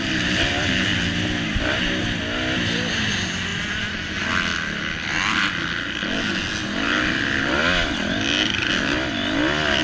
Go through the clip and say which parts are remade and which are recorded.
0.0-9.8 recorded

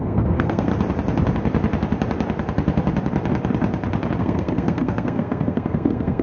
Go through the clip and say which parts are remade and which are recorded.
0.0-0.7 remade; 0.7-4.2 recorded; 4.2-6.2 remade

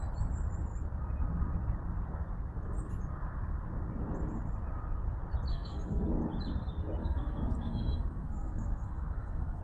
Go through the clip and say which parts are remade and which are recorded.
0.0-5.5 recorded; 5.5-6.1 remade; 6.1-7.0 recorded; 7.0-9.6 remade

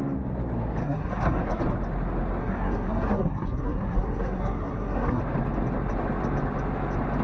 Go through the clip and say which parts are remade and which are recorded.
0.0-0.8 recorded; 0.8-1.6 remade; 1.6-2.4 recorded; 2.4-5.2 remade; 5.2-7.2 recorded